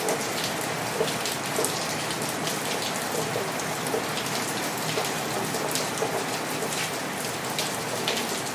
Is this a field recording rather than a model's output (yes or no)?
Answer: yes